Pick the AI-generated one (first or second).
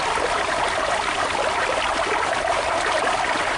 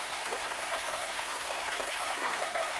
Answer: second